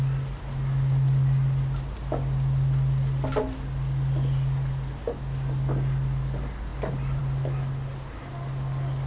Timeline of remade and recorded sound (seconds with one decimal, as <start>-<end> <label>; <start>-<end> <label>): 0.0-9.1 recorded